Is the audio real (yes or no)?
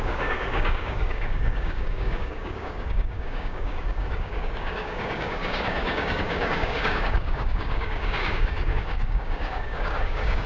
no